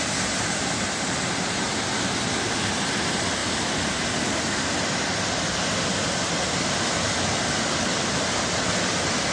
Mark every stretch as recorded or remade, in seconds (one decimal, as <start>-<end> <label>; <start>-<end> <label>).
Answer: 0.0-9.3 recorded